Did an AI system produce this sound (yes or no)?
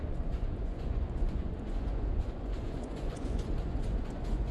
yes